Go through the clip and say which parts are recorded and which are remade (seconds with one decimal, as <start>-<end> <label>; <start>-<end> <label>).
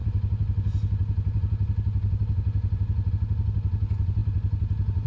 0.0-5.1 recorded